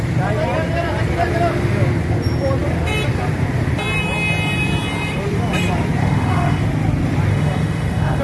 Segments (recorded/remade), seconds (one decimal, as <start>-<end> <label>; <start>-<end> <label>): 0.0-6.0 recorded; 6.0-6.6 remade; 6.6-7.3 recorded; 7.3-8.2 remade